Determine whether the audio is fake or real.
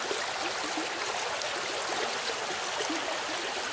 real